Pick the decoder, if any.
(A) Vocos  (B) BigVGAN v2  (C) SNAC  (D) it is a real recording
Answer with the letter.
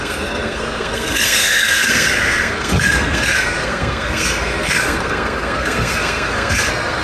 C